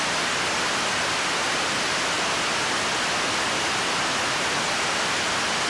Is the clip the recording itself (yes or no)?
yes